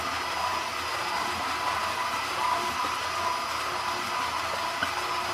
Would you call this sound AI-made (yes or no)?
no